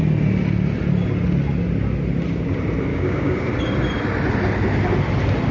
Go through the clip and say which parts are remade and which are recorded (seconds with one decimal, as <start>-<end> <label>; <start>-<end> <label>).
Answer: 0.0-2.9 recorded; 2.9-3.5 remade; 3.5-5.5 recorded